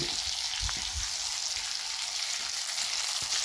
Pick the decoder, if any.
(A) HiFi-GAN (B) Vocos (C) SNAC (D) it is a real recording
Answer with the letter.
D